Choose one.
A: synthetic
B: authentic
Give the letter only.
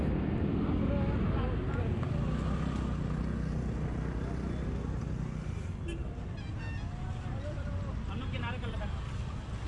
B